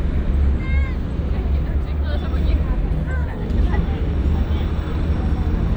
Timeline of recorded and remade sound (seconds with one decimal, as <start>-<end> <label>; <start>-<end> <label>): 0.0-3.2 recorded; 3.2-4.0 remade; 4.0-5.8 recorded